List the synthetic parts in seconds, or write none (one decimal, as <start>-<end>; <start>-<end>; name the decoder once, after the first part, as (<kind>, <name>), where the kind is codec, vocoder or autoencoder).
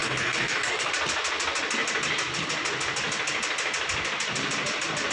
0.0-0.9 (codec, DAC)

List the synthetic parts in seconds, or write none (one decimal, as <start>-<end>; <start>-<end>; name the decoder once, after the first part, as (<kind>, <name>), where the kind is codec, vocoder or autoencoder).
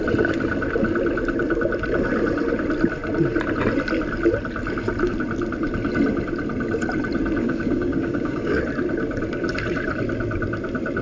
7.4-8.6 (codec, DAC)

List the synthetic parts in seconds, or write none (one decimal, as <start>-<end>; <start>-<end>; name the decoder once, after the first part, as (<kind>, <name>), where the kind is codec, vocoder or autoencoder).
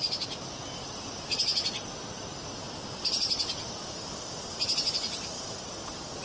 none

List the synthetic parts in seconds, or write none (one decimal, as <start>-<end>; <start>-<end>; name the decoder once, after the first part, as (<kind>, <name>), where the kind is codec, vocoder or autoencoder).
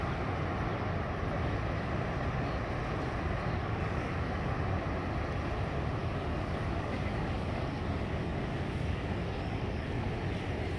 3.6-4.4 (codec, DAC); 6.0-10.1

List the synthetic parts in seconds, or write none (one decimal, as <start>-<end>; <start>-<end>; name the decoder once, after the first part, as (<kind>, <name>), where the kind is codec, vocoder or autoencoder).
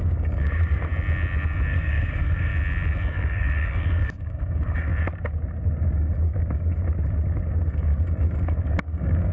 0.0-0.9 (codec, DAC); 1.7-2.5; 3.1-4.9; 5.8-6.8; 7.7-9.3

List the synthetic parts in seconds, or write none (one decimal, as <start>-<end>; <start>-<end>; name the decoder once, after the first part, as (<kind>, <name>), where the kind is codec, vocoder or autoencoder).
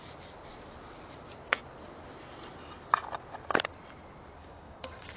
4.4-5.2 (codec, DAC)